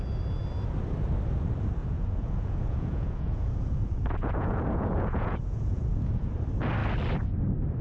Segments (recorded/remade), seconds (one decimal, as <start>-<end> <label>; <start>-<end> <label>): 0.0-1.8 recorded; 1.8-6.3 remade; 6.3-7.8 recorded